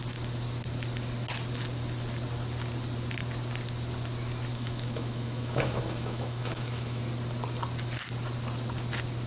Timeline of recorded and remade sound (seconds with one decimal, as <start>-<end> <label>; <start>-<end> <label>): 0.0-4.5 recorded; 4.5-7.0 remade; 7.0-9.3 recorded